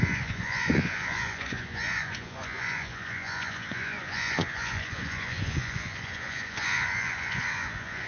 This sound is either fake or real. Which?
fake